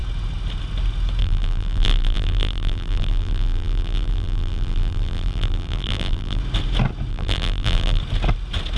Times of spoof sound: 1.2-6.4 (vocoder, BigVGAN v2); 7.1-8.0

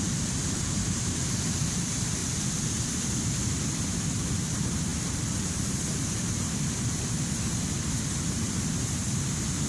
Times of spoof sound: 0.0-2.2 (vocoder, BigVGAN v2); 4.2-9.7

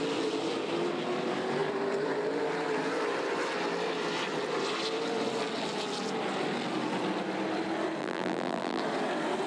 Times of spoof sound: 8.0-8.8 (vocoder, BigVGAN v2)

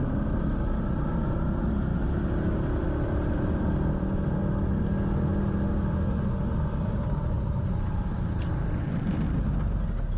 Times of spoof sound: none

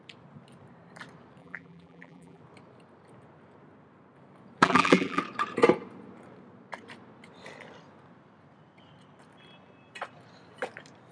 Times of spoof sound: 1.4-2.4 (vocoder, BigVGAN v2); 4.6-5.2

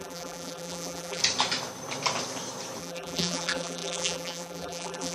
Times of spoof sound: 0.0-1.2 (vocoder, BigVGAN v2); 2.8-5.1

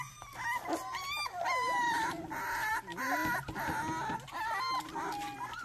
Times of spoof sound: none

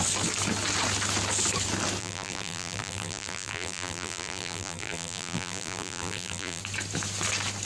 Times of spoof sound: 2.0-6.6 (vocoder, BigVGAN v2)